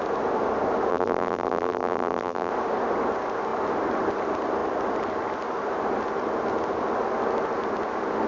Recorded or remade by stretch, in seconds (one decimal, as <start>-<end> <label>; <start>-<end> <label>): 0.0-0.9 recorded; 0.9-2.5 remade; 2.5-8.3 recorded

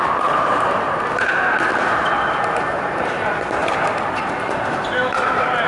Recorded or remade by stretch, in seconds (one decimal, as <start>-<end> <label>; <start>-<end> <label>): 0.0-1.7 remade; 1.7-2.8 recorded; 2.8-5.7 remade

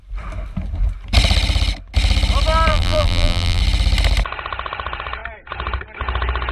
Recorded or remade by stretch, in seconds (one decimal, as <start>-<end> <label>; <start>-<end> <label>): 0.0-2.7 recorded; 2.7-3.6 remade; 3.6-6.5 recorded

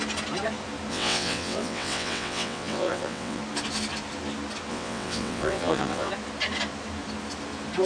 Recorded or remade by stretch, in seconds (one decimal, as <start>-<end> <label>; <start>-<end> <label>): 0.0-0.9 recorded; 0.9-3.4 remade; 3.4-4.7 recorded; 4.7-6.1 remade; 6.1-7.9 recorded